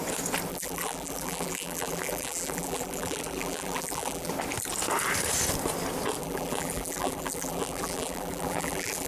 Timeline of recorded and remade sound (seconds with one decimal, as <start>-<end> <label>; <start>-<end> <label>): 0.0-0.5 recorded; 0.5-4.3 remade; 4.3-6.2 recorded; 6.2-9.1 remade